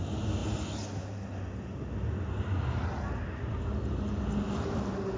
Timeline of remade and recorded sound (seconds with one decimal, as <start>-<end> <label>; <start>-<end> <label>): 0.0-5.2 recorded